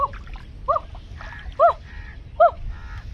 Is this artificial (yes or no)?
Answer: no